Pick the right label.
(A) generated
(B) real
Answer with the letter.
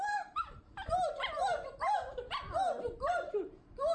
A